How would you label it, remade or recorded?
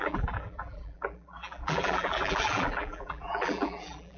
remade